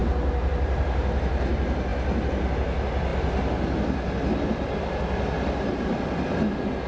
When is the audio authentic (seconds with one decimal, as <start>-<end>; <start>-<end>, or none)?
0.0-6.9